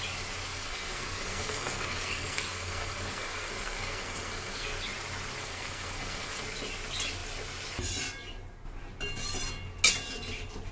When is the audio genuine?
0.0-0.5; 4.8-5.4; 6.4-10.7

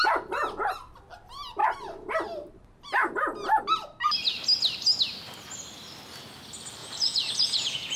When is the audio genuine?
0.0-6.8

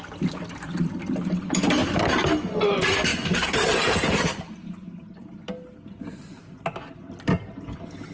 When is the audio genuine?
0.0-3.1; 4.4-8.1

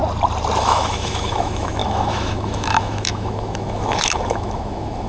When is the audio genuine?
0.0-0.6

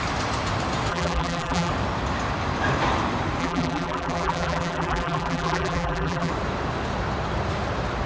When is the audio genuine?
0.0-0.9; 1.7-3.4; 6.3-8.1

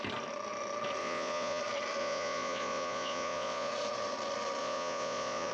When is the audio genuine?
0.0-1.0; 1.6-2.0; 3.7-4.6

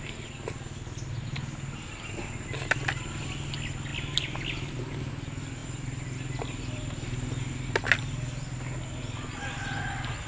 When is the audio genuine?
0.0-10.3

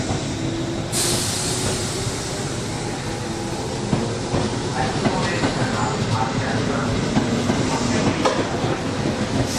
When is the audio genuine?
0.0-9.6